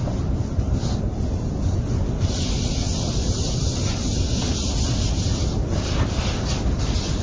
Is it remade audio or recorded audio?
recorded